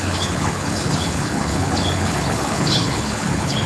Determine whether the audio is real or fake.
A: fake